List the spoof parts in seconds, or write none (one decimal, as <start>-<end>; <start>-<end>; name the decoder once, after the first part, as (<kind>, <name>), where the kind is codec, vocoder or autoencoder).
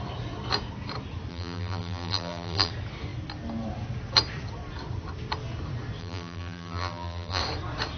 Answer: 1.3-2.7 (vocoder, BigVGAN v2); 6.0-7.4